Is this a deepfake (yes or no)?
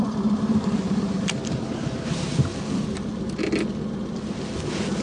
no